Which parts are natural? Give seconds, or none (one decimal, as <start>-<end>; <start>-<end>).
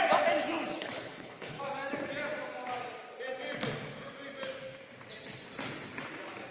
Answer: 0.0-0.7; 1.6-6.5